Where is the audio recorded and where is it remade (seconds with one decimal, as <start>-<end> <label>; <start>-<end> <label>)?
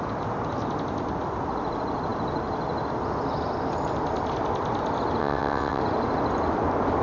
0.0-5.2 recorded; 5.2-5.8 remade; 5.8-7.0 recorded